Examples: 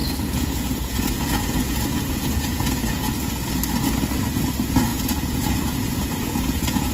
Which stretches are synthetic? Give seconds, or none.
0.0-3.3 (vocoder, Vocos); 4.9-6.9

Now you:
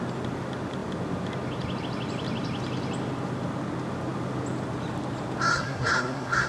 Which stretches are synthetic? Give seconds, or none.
5.5-6.5 (codec, SNAC)

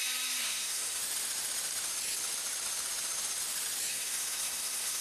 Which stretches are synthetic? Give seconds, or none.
0.4-1.0 (codec, SNAC); 3.9-5.0

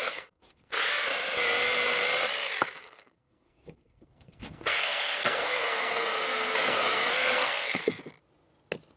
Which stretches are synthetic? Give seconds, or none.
0.0-0.7 (codec, SNAC); 2.8-8.0

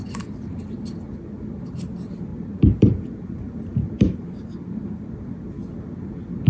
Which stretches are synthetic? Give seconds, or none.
0.0-0.9 (vocoder, BigVGAN v2); 2.3-5.0